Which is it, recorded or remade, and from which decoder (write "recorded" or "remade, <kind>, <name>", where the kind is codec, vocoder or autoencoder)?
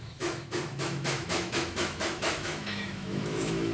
remade, autoencoder, DAC-VAE